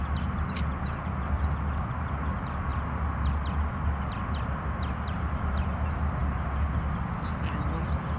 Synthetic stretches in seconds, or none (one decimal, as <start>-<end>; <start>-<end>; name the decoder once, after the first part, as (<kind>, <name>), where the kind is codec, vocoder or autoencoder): none